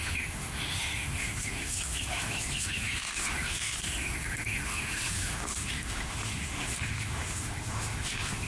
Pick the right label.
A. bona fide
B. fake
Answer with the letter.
B